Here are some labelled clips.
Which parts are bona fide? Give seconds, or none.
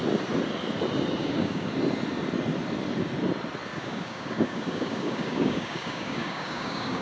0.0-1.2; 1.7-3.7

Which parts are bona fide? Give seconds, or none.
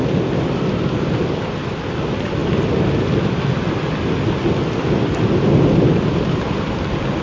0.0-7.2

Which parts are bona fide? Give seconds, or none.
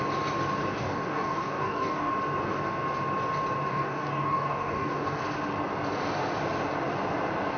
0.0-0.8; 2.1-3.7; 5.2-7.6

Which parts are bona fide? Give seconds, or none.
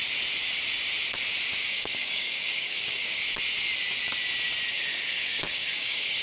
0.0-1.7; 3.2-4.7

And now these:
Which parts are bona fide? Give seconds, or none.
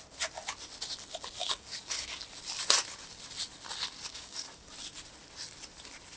0.0-1.4; 2.1-4.1; 4.7-6.2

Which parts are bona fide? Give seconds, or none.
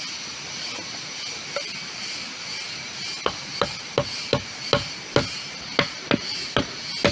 0.0-7.1